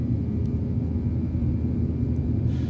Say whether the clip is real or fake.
real